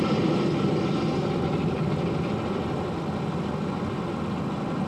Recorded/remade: recorded